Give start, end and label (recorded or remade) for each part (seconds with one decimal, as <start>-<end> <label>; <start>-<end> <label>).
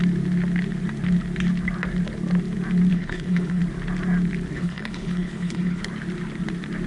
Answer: 0.0-2.9 recorded; 2.9-3.6 remade; 3.6-4.5 recorded; 4.5-5.9 remade; 5.9-6.9 recorded